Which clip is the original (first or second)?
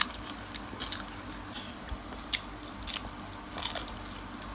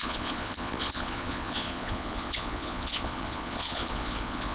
first